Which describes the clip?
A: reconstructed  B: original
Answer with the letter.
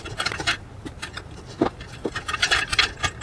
B